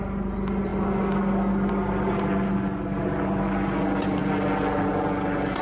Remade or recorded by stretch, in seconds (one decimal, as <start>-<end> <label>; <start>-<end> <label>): 0.0-5.6 recorded